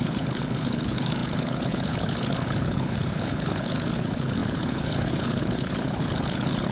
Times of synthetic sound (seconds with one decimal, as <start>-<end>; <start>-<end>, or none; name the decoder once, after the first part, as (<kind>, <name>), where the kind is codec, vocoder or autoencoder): 0.0-6.7 (codec, HILCodec)